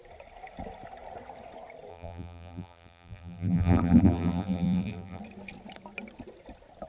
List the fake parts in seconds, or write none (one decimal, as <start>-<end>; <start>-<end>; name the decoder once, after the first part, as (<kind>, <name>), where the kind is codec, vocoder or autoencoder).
1.9-5.2 (vocoder, BigVGAN v2)